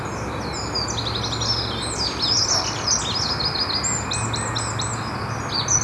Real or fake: real